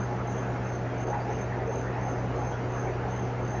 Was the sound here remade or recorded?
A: recorded